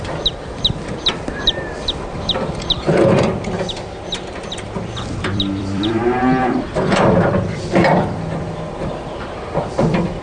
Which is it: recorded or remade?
remade